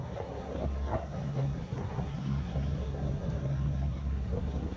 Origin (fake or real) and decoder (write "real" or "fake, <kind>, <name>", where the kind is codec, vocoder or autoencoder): fake, codec, SNAC